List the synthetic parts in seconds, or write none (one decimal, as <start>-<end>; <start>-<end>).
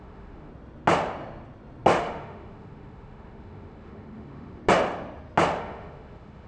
0.0-0.5; 2.0-4.6; 5.6-6.5